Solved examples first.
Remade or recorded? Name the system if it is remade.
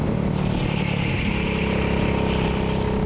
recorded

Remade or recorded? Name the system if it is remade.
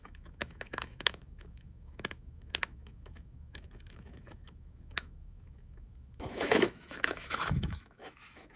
remade, autoencoder, DAC-VAE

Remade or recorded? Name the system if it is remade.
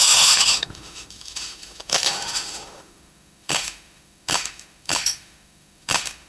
remade, autoencoder, DAC-VAE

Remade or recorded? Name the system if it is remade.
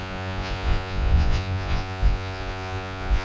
remade, vocoder, Vocos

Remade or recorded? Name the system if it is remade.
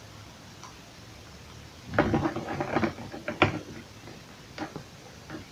recorded